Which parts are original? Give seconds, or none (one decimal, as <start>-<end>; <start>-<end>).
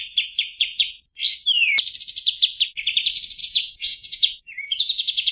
0.0-3.4